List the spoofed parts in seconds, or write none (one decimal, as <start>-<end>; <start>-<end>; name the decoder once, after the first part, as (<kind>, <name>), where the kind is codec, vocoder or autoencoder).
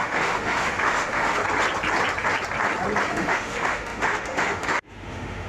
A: 0.0-1.4 (autoencoder, DAC-VAE); 3.1-5.5